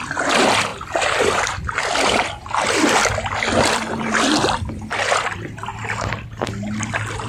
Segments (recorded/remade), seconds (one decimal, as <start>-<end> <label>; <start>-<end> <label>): 0.0-0.7 recorded; 0.7-4.9 remade; 4.9-5.7 recorded; 5.7-6.5 remade; 6.5-7.3 recorded